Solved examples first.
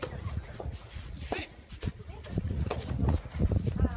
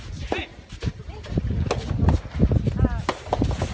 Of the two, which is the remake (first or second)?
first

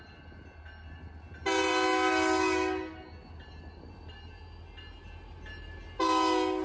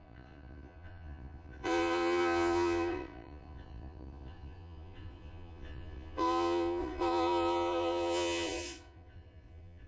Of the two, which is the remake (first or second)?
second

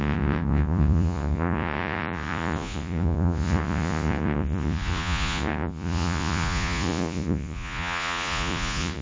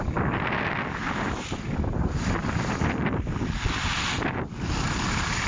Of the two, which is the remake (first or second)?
first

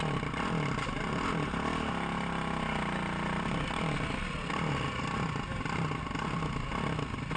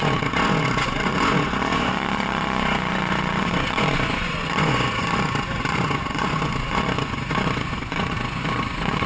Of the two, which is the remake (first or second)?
second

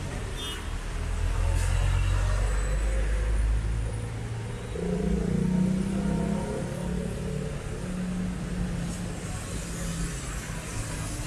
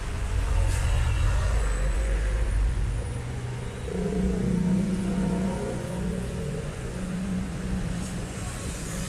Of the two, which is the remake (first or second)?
second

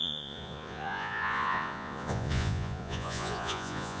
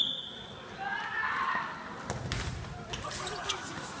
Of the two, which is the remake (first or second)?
first